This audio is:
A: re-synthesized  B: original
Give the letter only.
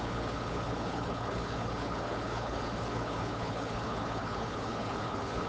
A